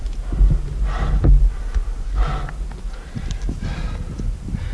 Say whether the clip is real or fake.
real